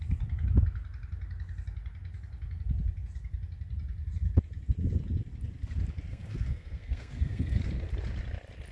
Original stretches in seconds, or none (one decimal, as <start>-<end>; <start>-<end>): 0.0-6.1; 7.6-8.7